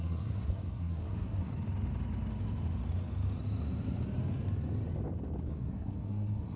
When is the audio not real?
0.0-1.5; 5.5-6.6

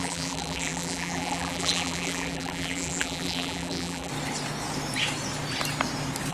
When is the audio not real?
0.0-4.1

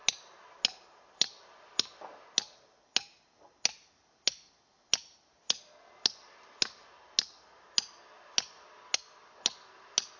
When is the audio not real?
none

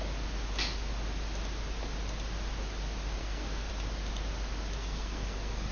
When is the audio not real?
3.2-3.7; 4.8-5.7

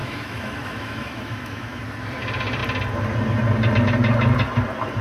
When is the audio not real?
0.0-1.8

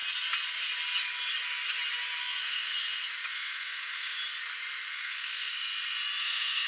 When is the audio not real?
2.2-2.7; 3.3-4.1; 4.9-5.5; 6.2-6.7